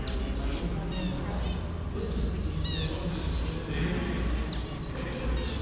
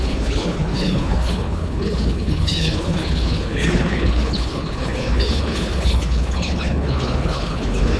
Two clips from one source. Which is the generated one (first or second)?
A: second